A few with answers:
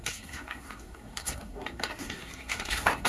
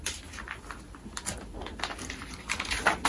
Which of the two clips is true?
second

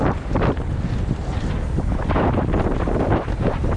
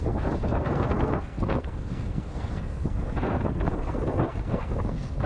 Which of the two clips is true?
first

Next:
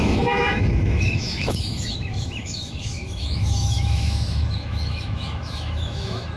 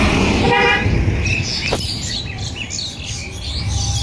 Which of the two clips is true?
second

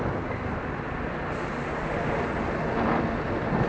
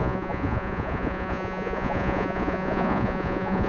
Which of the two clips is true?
first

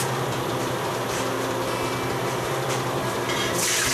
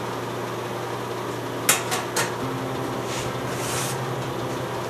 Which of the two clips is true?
second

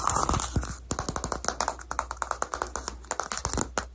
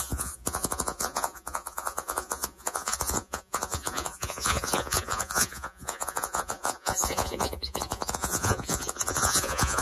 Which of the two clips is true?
first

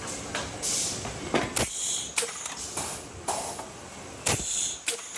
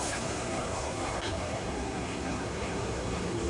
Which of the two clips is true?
first